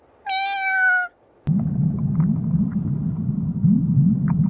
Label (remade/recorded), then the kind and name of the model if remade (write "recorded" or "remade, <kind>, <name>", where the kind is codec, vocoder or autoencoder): recorded